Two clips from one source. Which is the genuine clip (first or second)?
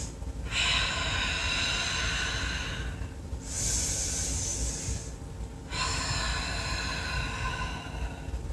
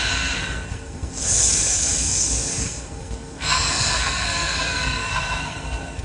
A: first